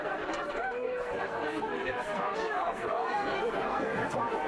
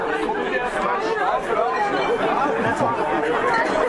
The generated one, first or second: first